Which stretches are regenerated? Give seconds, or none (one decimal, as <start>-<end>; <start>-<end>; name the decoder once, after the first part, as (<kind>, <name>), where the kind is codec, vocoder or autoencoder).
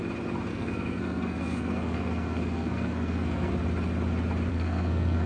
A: 0.5-3.5 (codec, SNAC); 4.5-5.3